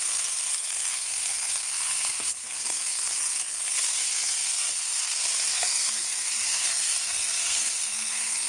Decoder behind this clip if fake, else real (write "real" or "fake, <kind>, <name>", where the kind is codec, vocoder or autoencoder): fake, codec, SNAC